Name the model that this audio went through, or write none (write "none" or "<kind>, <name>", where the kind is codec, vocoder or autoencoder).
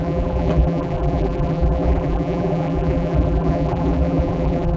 vocoder, BigVGAN v2